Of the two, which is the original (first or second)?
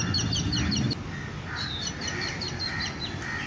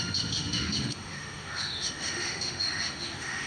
first